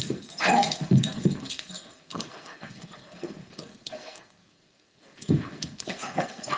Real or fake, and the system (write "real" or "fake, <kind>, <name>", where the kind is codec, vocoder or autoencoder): fake, codec, SNAC